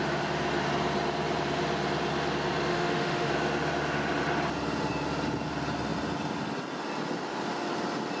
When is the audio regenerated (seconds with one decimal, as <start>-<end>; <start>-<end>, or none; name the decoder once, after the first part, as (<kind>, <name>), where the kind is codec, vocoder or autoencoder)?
2.7-3.3 (autoencoder, DAC-VAE)